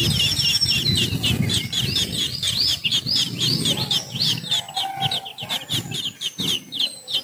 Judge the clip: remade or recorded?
recorded